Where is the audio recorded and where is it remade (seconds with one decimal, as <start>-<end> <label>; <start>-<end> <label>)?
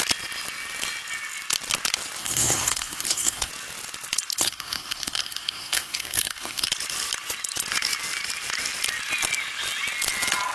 0.0-2.2 recorded; 2.2-3.5 remade; 3.5-4.3 recorded; 4.3-6.7 remade; 6.7-10.5 recorded